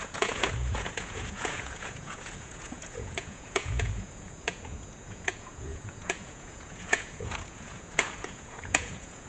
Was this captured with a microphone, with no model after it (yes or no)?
no